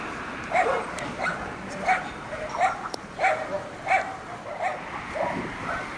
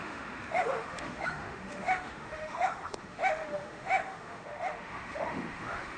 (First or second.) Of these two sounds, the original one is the first